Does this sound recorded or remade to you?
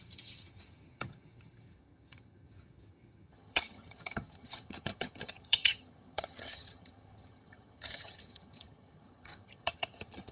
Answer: remade